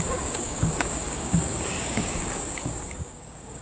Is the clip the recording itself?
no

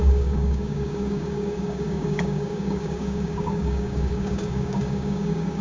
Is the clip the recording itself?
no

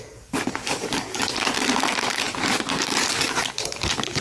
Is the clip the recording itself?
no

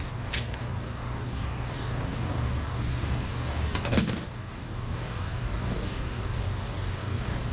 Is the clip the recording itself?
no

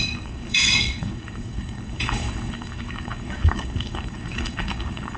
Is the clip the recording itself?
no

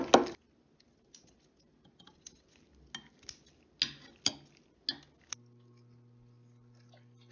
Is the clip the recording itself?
yes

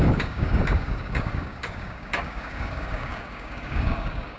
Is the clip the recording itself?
no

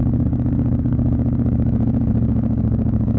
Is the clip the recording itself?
no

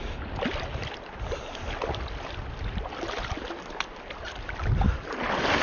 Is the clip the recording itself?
yes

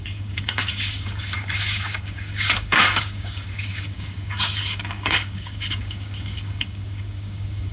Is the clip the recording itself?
no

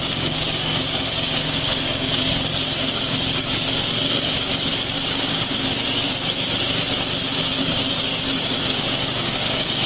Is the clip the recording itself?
no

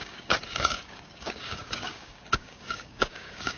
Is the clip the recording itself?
no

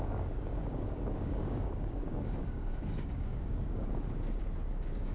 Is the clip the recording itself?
no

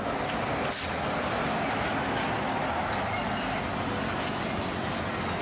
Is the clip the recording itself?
yes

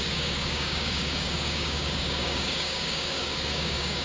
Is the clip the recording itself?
no